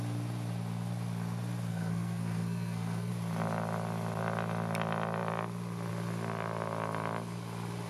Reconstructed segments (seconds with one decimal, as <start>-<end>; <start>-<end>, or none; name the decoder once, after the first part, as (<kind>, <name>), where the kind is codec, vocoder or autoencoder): 1.7-3.1 (codec, SNAC)